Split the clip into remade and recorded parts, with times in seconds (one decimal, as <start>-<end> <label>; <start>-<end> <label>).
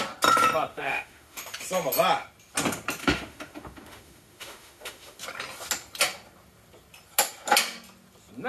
0.0-0.7 recorded; 0.7-1.4 remade; 1.4-3.0 recorded; 3.0-5.2 remade; 5.2-8.5 recorded